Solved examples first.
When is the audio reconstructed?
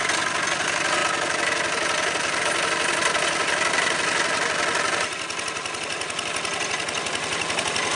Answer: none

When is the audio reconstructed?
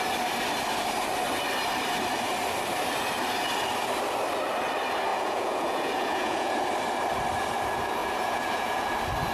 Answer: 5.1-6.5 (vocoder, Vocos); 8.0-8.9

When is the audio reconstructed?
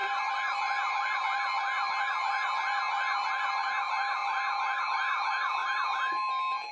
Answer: none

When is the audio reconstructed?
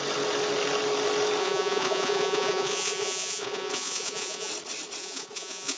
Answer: 1.4-4.5 (vocoder, Vocos); 5.0-5.8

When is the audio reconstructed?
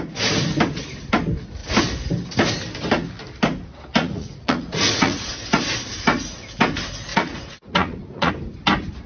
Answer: 4.0-5.3 (vocoder, Vocos); 7.1-8.3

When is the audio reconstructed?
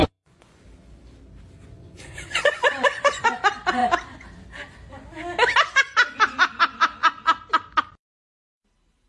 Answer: 0.0-0.6 (vocoder, Vocos); 1.6-3.4